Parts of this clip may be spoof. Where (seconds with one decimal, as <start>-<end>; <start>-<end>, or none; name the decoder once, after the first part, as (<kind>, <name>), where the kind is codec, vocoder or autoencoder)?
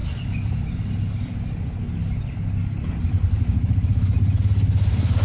0.0-1.3 (vocoder, BigVGAN v2)